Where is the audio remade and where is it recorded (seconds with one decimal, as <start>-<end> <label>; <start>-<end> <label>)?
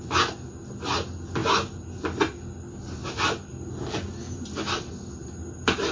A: 0.0-5.9 recorded